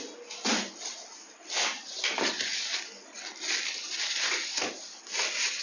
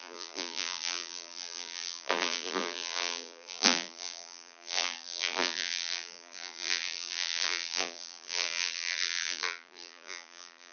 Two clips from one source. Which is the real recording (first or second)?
first